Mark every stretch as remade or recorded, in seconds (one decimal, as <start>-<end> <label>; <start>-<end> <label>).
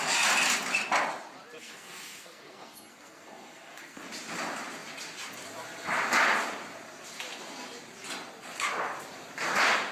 0.0-1.6 recorded; 1.6-4.0 remade; 4.0-9.9 recorded